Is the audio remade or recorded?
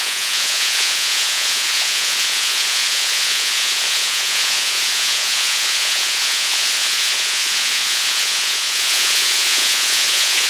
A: remade